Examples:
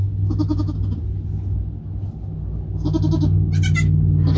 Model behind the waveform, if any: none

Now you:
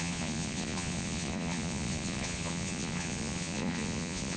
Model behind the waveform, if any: vocoder, Vocos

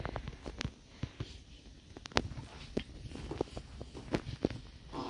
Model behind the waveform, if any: none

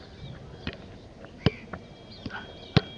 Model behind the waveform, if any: none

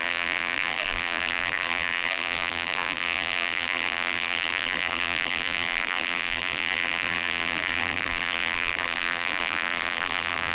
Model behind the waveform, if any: vocoder, BigVGAN v2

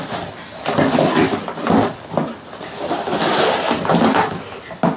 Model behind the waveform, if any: none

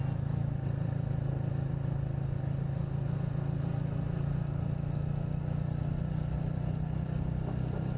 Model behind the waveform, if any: none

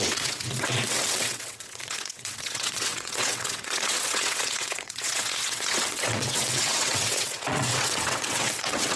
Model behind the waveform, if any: vocoder, WaveNeXt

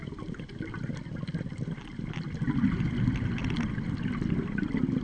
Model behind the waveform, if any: none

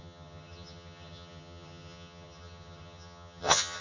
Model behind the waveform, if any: vocoder, HiFi-GAN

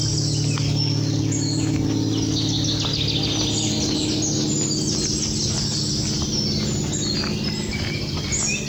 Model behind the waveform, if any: none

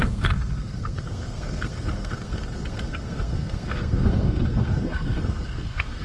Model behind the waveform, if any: codec, SNAC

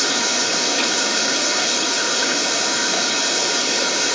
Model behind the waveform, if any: codec, HILCodec